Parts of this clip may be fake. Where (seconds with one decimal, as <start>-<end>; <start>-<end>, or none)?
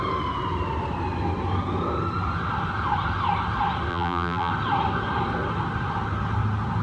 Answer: 3.9-4.5